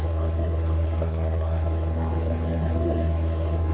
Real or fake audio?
fake